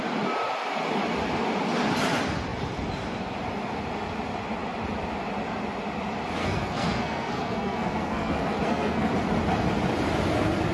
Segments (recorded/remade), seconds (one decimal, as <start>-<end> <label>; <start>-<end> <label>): 0.0-6.4 recorded; 6.4-9.1 remade; 9.1-10.7 recorded

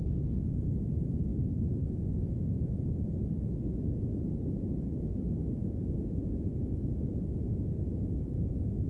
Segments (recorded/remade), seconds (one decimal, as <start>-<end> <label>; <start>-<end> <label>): 0.0-1.3 recorded; 1.3-3.0 remade; 3.0-5.4 recorded; 5.4-6.1 remade; 6.1-8.9 recorded

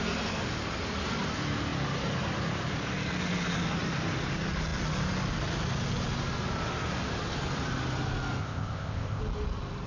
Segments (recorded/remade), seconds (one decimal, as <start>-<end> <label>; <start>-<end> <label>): 0.0-8.4 recorded; 8.4-9.2 remade; 9.2-9.9 recorded

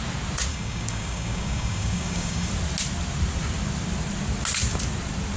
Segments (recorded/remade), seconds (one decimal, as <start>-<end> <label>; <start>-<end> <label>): 0.0-0.5 recorded; 0.5-2.5 remade; 2.5-5.4 recorded

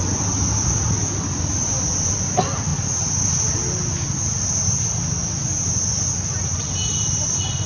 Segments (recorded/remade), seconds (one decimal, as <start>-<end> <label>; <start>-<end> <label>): 0.0-7.7 recorded

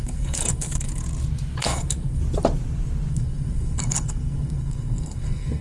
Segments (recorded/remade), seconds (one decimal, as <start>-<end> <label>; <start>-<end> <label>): 0.0-1.0 remade; 1.0-1.6 recorded; 1.6-2.2 remade; 2.2-3.1 recorded; 3.1-5.6 remade

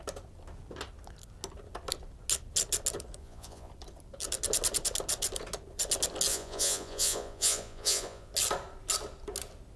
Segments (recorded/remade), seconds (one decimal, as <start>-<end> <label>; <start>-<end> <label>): 0.0-3.2 recorded; 3.2-3.7 remade; 3.7-6.3 recorded; 6.3-8.3 remade; 8.3-9.8 recorded